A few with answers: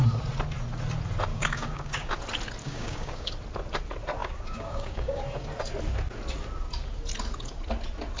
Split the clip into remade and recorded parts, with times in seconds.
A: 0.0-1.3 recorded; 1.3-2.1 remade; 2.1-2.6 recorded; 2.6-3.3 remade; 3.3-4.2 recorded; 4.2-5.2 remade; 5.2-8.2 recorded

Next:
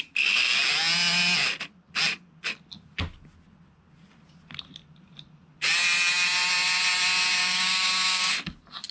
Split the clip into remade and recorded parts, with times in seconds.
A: 0.0-7.4 recorded; 7.4-8.3 remade; 8.3-8.9 recorded

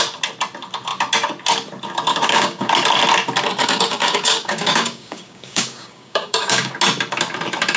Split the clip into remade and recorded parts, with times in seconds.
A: 0.0-2.1 recorded; 2.1-2.7 remade; 2.7-3.6 recorded; 3.6-6.7 remade; 6.7-7.8 recorded

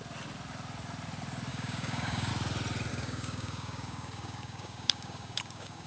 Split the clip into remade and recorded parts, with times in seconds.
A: 0.0-1.5 recorded; 1.5-2.3 remade; 2.3-2.9 recorded; 2.9-5.9 remade

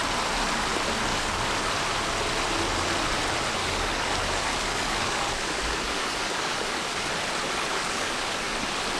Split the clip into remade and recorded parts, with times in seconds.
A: 0.0-1.1 recorded; 1.1-1.7 remade; 1.7-3.6 recorded; 3.6-7.1 remade; 7.1-7.7 recorded; 7.7-8.6 remade; 8.6-9.0 recorded